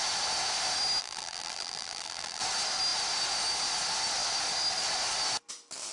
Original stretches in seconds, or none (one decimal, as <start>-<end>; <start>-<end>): 0.0-1.0; 2.4-5.9